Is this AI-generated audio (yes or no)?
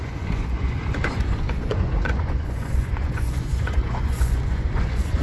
yes